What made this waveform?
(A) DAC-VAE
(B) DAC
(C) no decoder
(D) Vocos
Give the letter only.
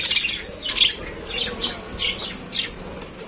C